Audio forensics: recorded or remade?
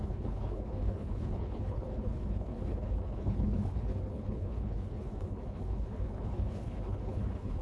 remade